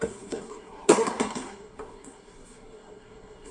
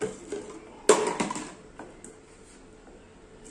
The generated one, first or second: first